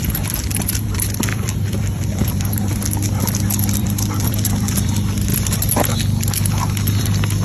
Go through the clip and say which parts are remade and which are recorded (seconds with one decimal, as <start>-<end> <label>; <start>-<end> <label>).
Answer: 0.0-5.3 remade; 5.3-6.0 recorded; 6.0-7.4 remade